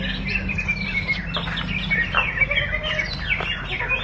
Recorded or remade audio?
recorded